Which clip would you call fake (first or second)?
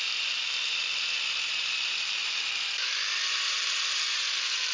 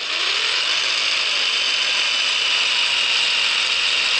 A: first